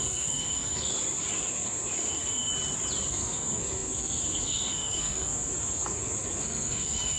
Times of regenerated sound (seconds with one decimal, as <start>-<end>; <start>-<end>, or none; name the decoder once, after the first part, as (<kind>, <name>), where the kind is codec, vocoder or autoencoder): 0.0-0.9 (codec, SNAC); 1.5-2.5; 3.1-7.2